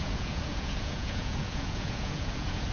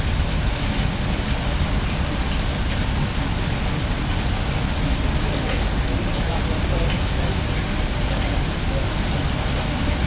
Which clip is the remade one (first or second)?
first